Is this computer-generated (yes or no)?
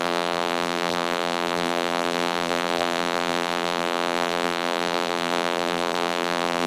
yes